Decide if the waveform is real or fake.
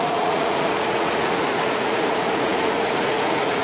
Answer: fake